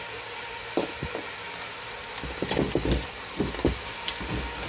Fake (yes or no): no